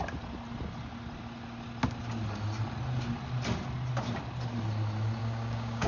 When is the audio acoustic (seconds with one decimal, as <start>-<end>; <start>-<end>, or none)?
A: 0.0-5.2